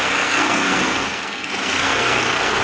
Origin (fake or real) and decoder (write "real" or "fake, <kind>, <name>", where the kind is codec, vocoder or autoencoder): fake, codec, SNAC